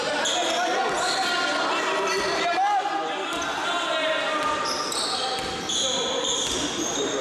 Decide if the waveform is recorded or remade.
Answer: recorded